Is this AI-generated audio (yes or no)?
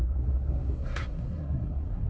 yes